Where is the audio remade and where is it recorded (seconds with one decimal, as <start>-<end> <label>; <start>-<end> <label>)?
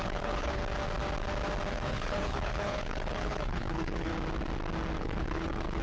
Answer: 0.0-0.6 remade; 0.6-1.7 recorded; 1.7-4.1 remade; 4.1-5.0 recorded; 5.0-5.8 remade